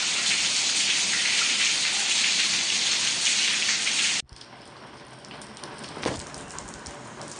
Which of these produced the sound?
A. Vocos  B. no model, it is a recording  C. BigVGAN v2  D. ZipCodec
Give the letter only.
B